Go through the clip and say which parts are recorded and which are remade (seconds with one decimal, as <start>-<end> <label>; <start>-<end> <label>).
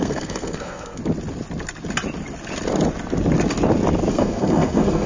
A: 0.0-1.0 remade; 1.0-4.1 recorded; 4.1-5.1 remade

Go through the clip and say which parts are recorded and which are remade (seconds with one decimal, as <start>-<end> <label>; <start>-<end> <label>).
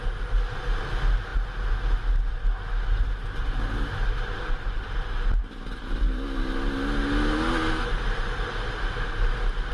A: 0.0-9.7 recorded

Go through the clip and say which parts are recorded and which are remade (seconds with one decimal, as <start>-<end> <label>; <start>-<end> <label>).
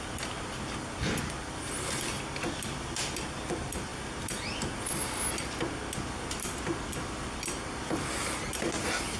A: 0.0-9.2 recorded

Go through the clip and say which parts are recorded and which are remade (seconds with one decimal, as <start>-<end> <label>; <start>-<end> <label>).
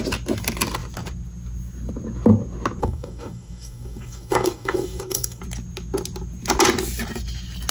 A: 0.0-2.8 recorded; 2.8-5.4 remade; 5.4-7.7 recorded